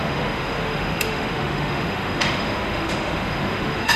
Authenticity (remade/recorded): remade